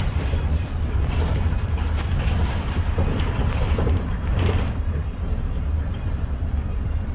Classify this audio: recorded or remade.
remade